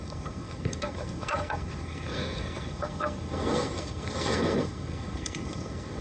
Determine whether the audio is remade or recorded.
remade